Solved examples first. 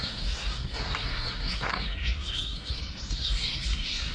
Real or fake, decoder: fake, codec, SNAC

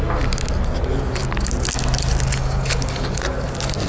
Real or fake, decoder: real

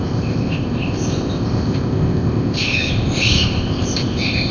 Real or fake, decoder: fake, codec, ZipCodec